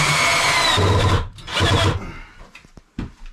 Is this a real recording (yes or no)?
yes